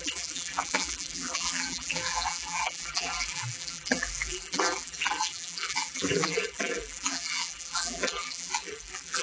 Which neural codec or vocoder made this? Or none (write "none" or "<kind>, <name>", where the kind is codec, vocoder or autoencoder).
vocoder, BigVGAN v2